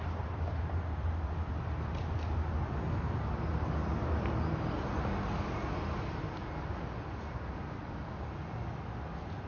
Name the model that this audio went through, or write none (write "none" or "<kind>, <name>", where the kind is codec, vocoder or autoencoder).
none